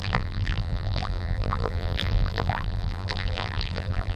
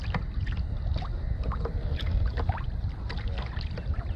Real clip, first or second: second